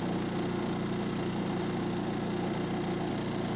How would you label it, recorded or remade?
recorded